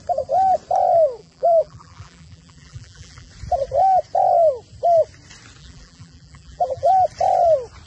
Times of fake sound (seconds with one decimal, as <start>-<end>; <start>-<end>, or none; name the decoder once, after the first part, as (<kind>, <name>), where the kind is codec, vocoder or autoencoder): 1.2-3.3 (vocoder, BigVGAN v2); 5.6-6.9